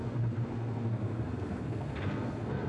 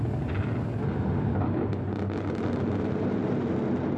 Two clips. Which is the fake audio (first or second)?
first